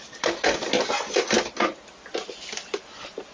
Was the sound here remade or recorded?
recorded